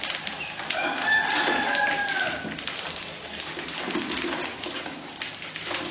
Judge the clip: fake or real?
real